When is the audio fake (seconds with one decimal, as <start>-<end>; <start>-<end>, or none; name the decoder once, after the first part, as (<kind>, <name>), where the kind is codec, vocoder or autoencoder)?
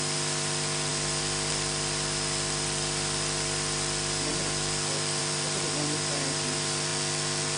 0.0-6.9 (vocoder, BigVGAN v2)